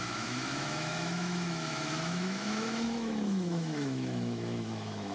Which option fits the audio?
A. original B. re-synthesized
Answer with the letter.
B